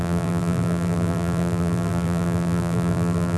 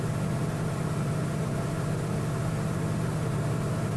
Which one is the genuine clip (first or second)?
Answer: second